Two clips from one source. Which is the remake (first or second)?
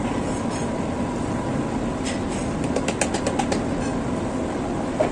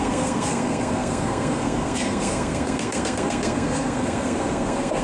second